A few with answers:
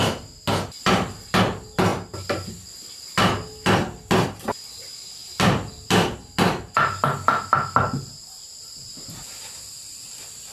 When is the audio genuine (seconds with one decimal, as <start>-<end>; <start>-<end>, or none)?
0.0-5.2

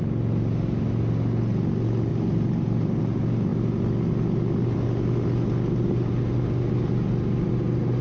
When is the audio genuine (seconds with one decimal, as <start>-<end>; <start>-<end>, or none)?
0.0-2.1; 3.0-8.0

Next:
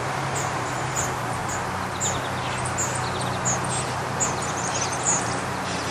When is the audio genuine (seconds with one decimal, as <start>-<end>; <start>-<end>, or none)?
1.4-4.5